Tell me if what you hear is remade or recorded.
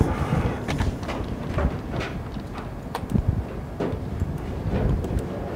recorded